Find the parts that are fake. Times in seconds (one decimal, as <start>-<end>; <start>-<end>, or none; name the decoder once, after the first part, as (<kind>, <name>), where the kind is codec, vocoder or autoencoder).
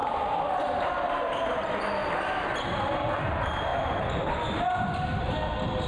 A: none